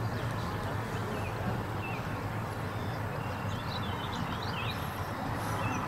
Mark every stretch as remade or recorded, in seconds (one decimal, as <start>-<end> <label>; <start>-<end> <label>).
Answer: 0.0-5.9 recorded